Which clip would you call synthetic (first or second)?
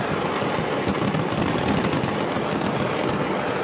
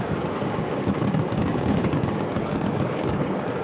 second